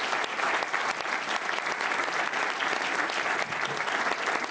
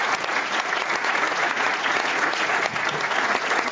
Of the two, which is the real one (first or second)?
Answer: first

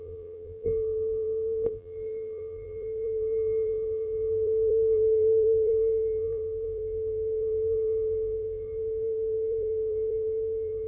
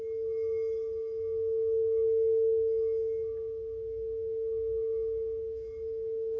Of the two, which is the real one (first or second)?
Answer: second